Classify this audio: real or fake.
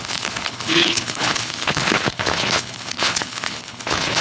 fake